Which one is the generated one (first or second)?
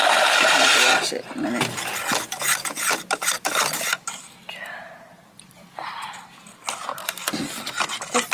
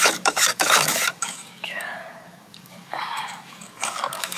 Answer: second